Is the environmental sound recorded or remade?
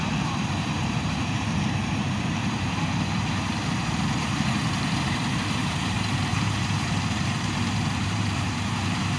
remade